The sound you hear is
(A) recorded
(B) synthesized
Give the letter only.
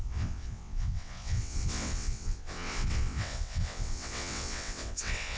B